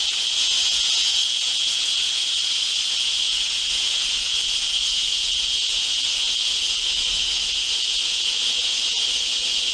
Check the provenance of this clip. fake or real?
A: fake